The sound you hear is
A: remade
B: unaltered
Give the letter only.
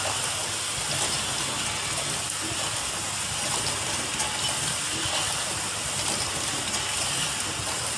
B